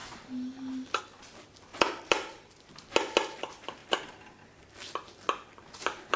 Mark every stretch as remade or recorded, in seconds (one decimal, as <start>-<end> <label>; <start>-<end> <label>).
0.0-1.7 recorded; 1.7-2.5 remade; 2.5-6.2 recorded